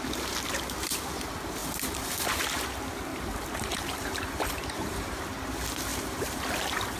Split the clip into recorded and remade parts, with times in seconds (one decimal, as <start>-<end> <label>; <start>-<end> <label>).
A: 0.0-3.1 recorded; 3.1-5.2 remade; 5.2-5.9 recorded; 5.9-6.4 remade; 6.4-7.0 recorded